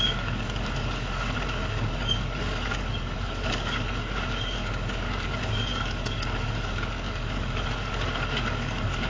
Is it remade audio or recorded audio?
remade